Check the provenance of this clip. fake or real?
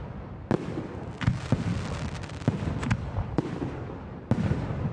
real